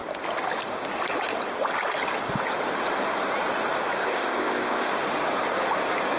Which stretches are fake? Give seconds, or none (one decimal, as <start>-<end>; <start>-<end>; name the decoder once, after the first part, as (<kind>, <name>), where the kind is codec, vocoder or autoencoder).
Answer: 4.0-4.9 (codec, ZipCodec)